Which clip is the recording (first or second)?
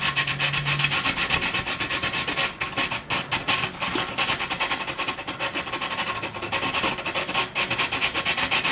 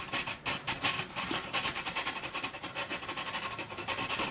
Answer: first